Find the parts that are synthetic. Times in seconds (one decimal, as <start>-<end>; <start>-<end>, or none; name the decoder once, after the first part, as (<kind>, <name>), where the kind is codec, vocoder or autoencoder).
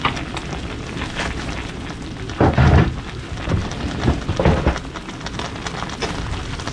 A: 0.4-3.1 (vocoder, BigVGAN v2); 3.6-4.3